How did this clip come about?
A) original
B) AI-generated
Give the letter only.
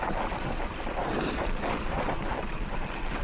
B